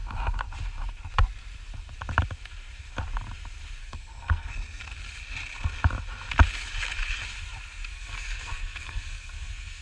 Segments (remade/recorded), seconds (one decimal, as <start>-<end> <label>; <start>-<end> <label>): 0.0-3.8 recorded; 3.8-4.5 remade; 4.5-7.9 recorded; 7.9-9.8 remade